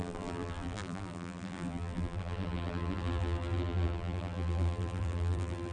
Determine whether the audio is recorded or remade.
remade